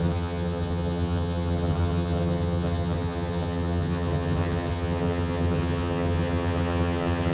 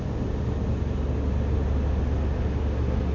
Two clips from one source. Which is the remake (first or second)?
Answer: first